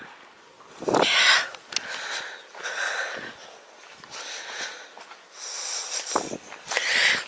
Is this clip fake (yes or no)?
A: no